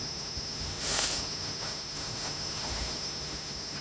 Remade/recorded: remade